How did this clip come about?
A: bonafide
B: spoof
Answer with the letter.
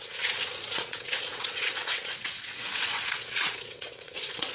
B